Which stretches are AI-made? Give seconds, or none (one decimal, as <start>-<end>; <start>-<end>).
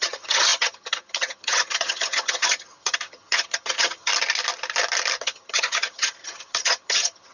0.0-4.1; 5.2-7.3